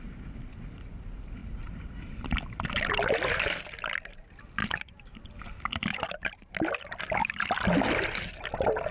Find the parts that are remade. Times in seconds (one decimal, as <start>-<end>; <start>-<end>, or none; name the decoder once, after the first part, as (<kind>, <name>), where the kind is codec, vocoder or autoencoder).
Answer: 1.4-2.4 (vocoder, BigVGAN v2); 4.6-5.2; 5.9-6.5